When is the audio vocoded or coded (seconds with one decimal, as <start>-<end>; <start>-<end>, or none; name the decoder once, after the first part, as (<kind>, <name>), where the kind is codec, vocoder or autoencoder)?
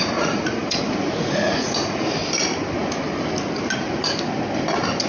0.0-2.2 (vocoder, Vocos)